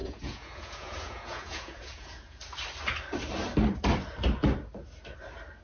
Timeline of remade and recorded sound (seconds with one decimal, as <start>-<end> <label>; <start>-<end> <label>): 0.0-2.4 remade; 2.4-5.6 recorded